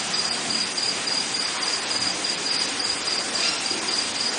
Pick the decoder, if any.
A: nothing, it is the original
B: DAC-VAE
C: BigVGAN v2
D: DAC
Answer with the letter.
A